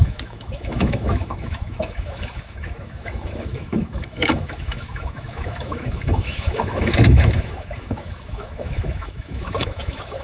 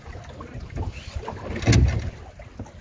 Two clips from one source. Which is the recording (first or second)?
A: second